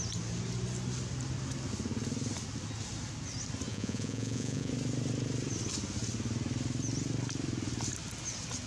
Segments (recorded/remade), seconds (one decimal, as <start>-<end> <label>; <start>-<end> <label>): 0.0-3.7 recorded; 3.7-4.7 remade; 4.7-8.7 recorded

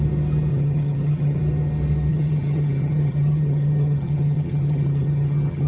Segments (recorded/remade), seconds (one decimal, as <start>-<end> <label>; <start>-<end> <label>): 0.0-0.5 recorded; 0.5-1.4 remade; 1.4-2.1 recorded; 2.1-5.7 remade

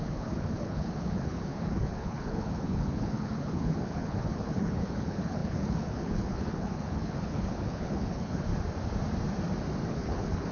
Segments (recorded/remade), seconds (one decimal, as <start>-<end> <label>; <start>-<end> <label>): 0.0-8.5 remade; 8.5-9.9 recorded; 9.9-10.5 remade

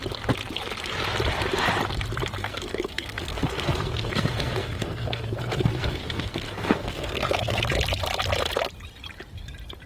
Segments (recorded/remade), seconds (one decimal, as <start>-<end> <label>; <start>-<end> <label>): 0.0-2.4 recorded; 2.4-7.6 remade; 7.6-9.9 recorded

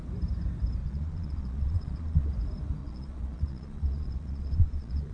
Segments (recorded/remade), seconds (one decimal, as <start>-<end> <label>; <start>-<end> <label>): 0.0-0.8 recorded; 0.8-2.3 remade; 2.3-2.8 recorded; 2.8-5.1 remade

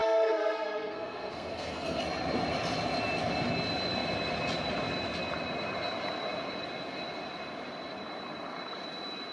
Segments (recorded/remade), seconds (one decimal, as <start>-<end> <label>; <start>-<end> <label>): 0.0-2.0 remade; 2.0-9.3 recorded

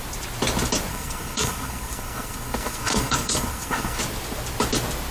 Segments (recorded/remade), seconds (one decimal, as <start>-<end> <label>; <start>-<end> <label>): 0.0-0.9 recorded; 0.9-4.0 remade; 4.0-5.1 recorded

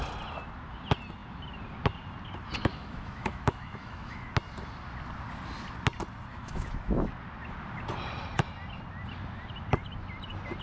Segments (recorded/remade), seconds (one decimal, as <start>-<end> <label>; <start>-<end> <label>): 0.0-2.7 recorded; 2.7-4.3 remade; 4.3-6.3 recorded; 6.3-7.1 remade; 7.1-10.6 recorded